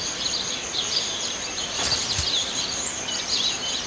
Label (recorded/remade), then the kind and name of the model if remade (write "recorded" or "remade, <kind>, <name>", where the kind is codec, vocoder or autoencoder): remade, vocoder, BigVGAN v2